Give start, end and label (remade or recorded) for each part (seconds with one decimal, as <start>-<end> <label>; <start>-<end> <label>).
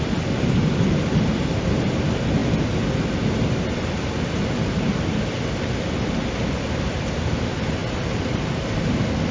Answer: 0.0-9.3 recorded